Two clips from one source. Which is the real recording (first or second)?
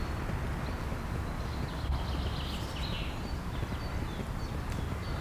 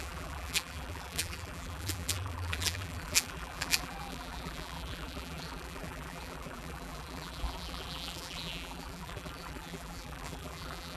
first